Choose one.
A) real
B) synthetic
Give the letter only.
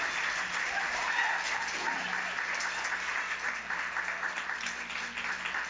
A